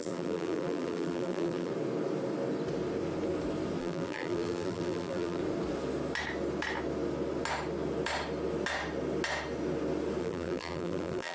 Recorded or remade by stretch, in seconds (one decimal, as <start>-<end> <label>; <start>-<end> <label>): 0.0-1.7 remade; 1.7-3.8 recorded; 3.8-5.4 remade; 5.4-10.2 recorded; 10.2-11.3 remade